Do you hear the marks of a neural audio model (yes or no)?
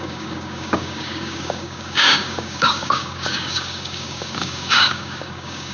yes